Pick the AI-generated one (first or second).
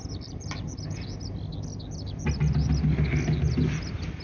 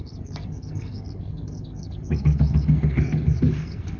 second